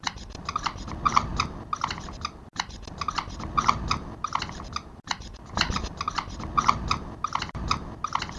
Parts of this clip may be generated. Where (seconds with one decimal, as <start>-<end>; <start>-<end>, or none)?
none